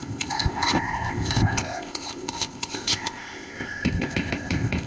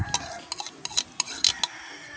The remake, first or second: first